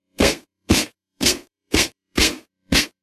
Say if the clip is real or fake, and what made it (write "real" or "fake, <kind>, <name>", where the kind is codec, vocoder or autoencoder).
fake, codec, SNAC